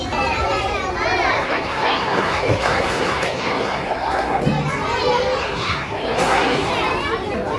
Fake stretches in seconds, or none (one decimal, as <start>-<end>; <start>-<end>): 1.3-4.4; 5.4-6.7